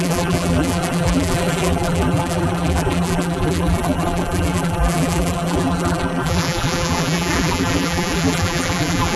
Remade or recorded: remade